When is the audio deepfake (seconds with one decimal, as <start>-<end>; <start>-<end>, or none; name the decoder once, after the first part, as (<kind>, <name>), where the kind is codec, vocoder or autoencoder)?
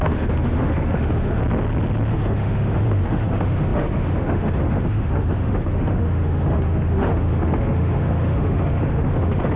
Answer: 0.0-1.4 (autoencoder, DAC-VAE); 2.1-9.6